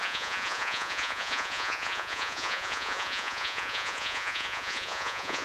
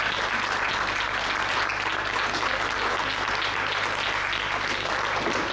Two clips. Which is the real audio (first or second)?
second